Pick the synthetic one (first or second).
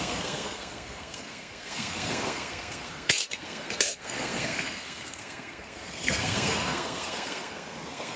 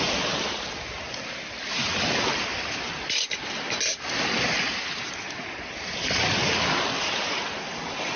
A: first